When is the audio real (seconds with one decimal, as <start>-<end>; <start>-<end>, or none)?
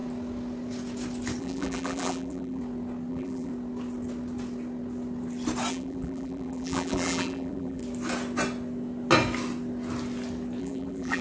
0.0-1.4; 2.6-3.1; 3.5-5.7; 7.8-10.6